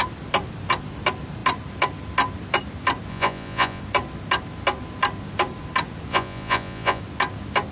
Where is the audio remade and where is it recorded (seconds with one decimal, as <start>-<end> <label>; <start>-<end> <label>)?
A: 0.0-3.1 recorded; 3.1-3.8 remade; 3.8-6.1 recorded; 6.1-7.0 remade; 7.0-7.7 recorded